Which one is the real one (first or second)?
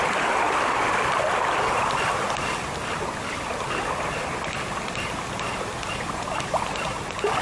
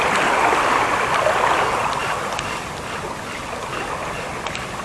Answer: second